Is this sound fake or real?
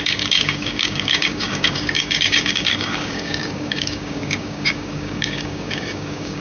fake